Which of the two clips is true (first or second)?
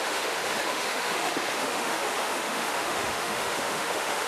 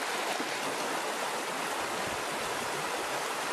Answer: second